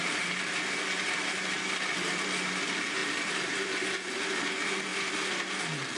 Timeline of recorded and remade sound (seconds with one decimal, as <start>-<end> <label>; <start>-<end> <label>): 0.0-3.0 recorded; 3.0-3.7 remade; 3.7-4.9 recorded; 4.9-5.6 remade; 5.6-6.0 recorded